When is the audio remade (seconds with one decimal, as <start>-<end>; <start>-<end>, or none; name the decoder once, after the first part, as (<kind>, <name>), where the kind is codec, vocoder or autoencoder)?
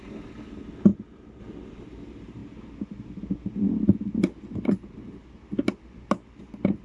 0.0-2.4 (vocoder, BigVGAN v2)